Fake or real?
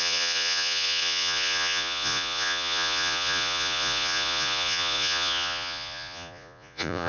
fake